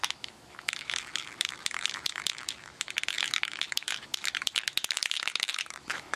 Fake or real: fake